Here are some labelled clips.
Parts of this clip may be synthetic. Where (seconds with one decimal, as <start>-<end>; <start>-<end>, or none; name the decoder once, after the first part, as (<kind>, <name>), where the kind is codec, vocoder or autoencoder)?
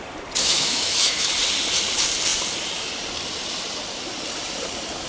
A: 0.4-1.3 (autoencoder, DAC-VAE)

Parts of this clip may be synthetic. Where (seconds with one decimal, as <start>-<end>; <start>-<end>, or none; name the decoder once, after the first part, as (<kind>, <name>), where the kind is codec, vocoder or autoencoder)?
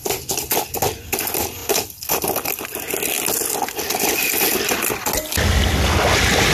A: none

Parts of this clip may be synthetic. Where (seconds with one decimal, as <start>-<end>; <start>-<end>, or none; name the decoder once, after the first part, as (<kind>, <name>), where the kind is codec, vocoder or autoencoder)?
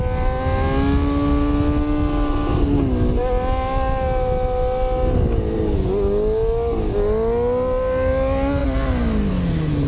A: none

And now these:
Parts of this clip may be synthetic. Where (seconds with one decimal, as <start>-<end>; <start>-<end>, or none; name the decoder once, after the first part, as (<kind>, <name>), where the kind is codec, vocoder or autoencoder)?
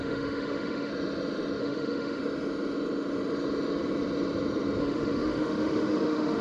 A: 0.0-0.9 (autoencoder, DAC-VAE); 1.6-2.2; 4.8-6.4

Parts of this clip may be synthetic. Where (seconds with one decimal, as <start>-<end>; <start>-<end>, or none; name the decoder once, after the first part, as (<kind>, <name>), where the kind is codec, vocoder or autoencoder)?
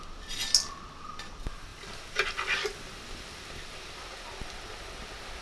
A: none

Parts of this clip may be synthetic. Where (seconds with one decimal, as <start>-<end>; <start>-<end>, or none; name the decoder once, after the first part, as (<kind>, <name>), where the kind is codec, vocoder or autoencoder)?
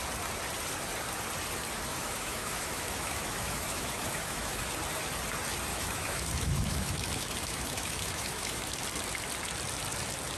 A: 1.9-4.6 (autoencoder, DAC-VAE); 5.7-8.7